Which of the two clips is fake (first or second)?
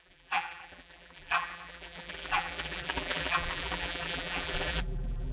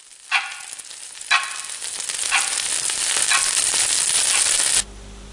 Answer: first